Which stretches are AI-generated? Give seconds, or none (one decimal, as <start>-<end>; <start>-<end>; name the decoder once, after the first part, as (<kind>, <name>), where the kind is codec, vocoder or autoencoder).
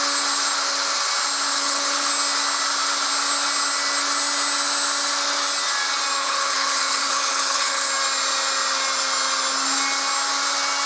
1.5-2.1 (codec, HILCodec); 6.2-7.9